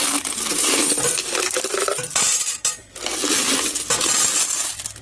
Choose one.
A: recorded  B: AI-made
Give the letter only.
A